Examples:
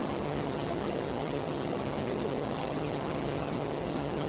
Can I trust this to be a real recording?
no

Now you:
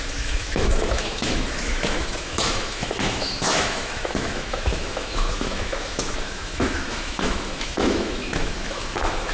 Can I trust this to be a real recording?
no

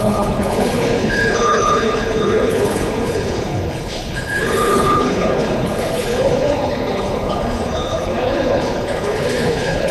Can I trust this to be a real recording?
no